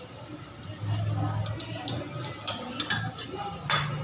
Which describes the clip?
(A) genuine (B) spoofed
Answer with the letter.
A